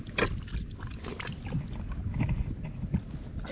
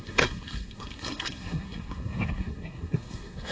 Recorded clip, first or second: first